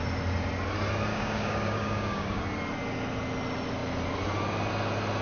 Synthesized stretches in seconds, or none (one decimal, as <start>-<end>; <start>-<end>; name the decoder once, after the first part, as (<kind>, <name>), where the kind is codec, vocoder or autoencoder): 1.1-2.4 (codec, DAC)